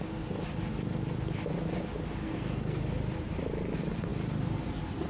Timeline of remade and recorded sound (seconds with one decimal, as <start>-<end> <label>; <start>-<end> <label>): 0.0-2.2 recorded; 2.2-2.8 remade; 2.8-5.1 recorded

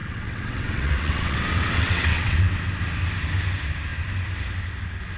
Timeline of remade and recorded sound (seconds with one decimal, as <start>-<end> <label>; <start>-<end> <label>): 0.0-2.5 remade; 2.5-5.2 recorded

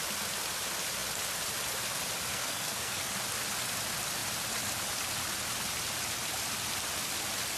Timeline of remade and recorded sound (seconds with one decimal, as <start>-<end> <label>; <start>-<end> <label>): 0.0-2.3 recorded; 2.3-3.1 remade; 3.1-7.6 recorded

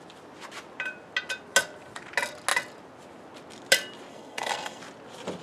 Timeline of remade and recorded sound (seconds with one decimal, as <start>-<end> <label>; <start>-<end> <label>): 0.0-4.1 recorded; 4.1-4.8 remade; 4.8-5.4 recorded

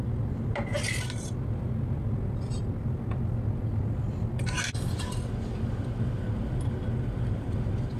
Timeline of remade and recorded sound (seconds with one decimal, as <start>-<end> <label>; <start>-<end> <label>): 0.0-8.0 recorded

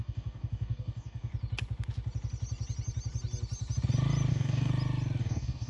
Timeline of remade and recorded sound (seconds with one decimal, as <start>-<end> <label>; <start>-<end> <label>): 0.0-1.3 remade; 1.3-4.3 recorded; 4.3-4.7 remade; 4.7-5.2 recorded; 5.2-5.7 remade

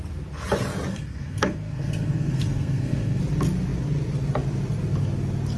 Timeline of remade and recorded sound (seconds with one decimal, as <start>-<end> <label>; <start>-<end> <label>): 0.0-0.9 recorded; 0.9-3.2 remade; 3.2-5.6 recorded